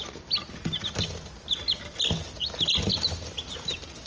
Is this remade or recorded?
recorded